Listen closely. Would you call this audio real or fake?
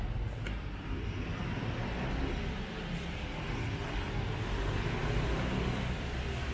real